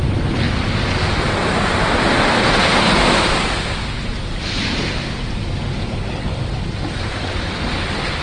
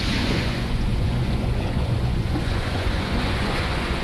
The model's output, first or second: second